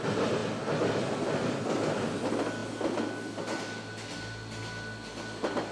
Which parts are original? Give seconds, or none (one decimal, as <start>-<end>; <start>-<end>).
0.0-5.7